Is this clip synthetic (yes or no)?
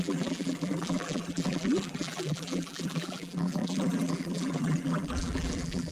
yes